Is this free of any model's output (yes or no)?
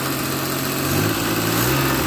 yes